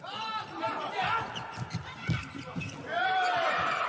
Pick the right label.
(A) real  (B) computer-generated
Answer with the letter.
A